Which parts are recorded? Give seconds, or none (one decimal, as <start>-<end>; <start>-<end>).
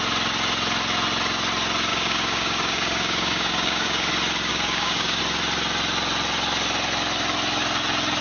0.0-1.9; 4.1-4.5; 5.2-8.2